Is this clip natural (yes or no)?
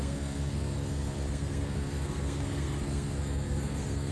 no